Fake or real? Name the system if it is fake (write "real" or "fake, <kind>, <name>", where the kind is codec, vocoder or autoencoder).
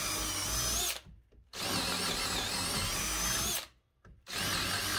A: real